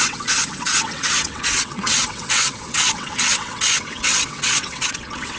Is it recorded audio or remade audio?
remade